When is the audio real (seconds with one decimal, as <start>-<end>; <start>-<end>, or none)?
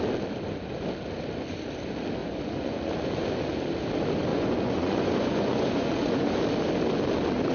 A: 0.0-2.2; 2.9-4.3; 6.4-7.5